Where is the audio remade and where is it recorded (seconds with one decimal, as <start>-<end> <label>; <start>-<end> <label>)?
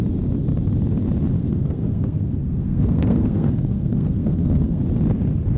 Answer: 0.0-1.4 recorded; 1.4-4.8 remade; 4.8-5.6 recorded